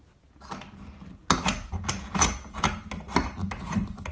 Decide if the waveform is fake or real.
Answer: real